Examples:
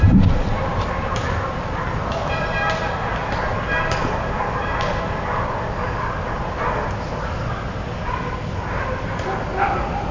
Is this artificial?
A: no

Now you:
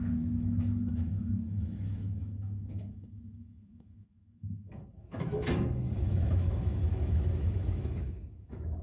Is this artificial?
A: yes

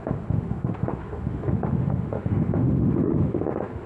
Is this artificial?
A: yes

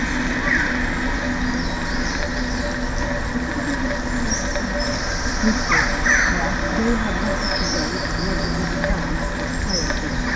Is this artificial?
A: no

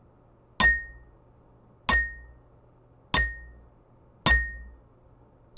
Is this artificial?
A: no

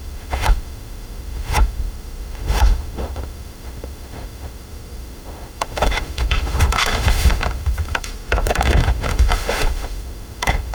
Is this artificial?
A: yes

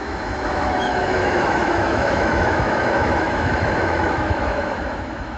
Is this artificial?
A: yes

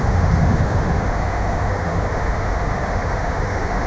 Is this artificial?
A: yes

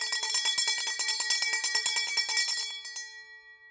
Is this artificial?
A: no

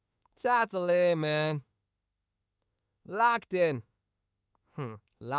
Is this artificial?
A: yes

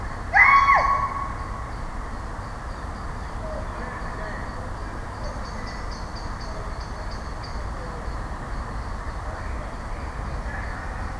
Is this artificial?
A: no